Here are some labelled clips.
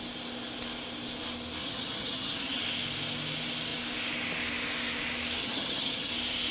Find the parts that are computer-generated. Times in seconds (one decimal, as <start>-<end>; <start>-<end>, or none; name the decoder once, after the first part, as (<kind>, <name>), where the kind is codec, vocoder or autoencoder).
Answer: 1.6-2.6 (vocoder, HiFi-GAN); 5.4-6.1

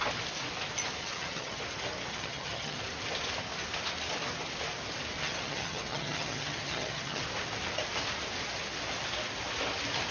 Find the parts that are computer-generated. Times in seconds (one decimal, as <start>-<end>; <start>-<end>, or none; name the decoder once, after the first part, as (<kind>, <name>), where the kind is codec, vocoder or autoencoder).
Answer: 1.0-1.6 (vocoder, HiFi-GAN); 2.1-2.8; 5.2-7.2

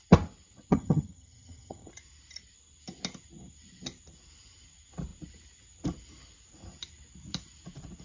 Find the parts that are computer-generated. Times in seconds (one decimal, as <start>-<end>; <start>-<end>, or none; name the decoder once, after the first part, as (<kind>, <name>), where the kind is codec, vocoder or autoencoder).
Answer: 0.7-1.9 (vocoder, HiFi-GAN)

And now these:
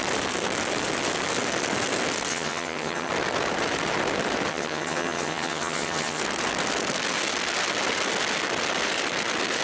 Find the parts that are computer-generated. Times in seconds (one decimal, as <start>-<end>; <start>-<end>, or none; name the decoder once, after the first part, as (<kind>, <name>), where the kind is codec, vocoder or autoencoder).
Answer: 2.3-3.1 (vocoder, HiFi-GAN); 4.5-6.2

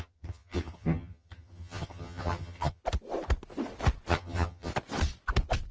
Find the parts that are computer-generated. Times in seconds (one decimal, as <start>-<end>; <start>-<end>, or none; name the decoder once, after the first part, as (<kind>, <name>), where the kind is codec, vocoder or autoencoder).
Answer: 0.0-2.8 (vocoder, HiFi-GAN); 4.1-4.7